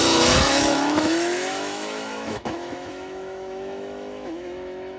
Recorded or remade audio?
remade